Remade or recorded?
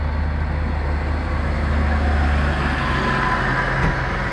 recorded